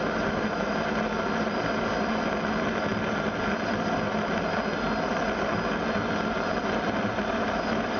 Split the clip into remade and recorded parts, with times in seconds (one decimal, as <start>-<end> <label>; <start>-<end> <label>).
0.0-8.0 recorded